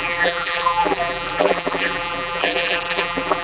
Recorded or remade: remade